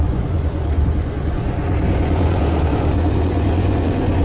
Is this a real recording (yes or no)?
no